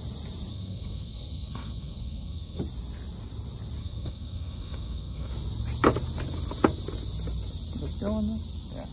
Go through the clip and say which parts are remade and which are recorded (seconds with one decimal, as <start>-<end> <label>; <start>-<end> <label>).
0.0-0.5 recorded; 0.5-2.6 remade; 2.6-3.8 recorded; 3.8-5.3 remade; 5.3-8.9 recorded